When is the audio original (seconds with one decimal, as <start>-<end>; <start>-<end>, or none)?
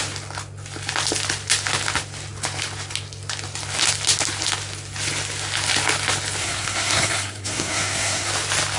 0.0-6.4; 8.3-8.8